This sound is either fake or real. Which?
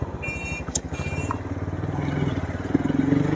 real